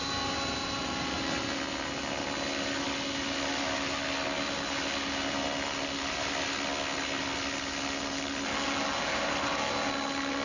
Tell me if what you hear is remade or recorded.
recorded